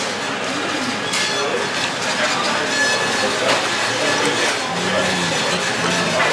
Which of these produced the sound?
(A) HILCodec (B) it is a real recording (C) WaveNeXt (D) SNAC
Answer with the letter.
B